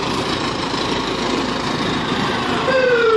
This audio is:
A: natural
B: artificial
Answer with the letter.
B